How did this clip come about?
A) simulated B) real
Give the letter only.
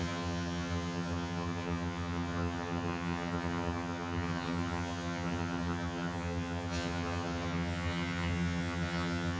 A